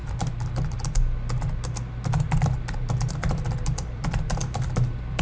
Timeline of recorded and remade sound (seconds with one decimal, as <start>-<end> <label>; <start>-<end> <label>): 0.0-3.1 recorded; 3.1-5.2 remade